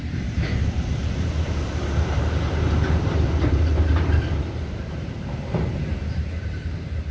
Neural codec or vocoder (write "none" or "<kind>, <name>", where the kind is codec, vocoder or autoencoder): vocoder, BigVGAN v2